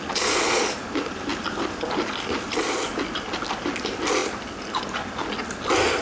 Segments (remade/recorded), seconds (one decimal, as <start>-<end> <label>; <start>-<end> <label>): 0.0-1.3 recorded; 1.3-2.9 remade; 2.9-4.2 recorded; 4.2-4.8 remade; 4.8-6.0 recorded